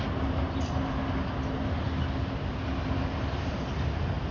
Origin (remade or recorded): recorded